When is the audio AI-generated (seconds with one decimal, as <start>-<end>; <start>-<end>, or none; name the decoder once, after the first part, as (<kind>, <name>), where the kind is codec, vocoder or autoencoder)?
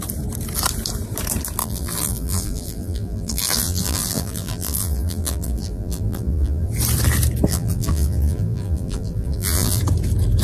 1.6-6.7 (vocoder, BigVGAN v2); 7.5-9.8